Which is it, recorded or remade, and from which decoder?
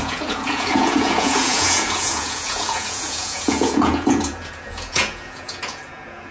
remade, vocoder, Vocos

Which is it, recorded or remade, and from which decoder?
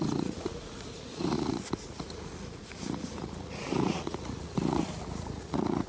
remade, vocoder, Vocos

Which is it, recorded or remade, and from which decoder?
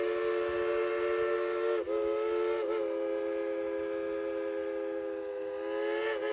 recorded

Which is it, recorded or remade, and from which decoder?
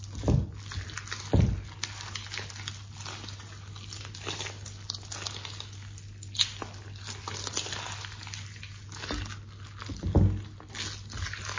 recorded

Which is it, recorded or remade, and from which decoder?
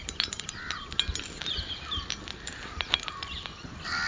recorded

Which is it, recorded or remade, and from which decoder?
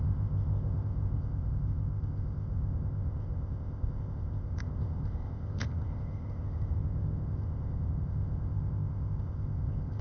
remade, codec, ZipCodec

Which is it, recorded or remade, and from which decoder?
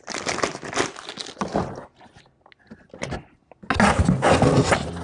recorded